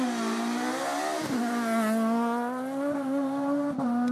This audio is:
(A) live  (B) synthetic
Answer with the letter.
A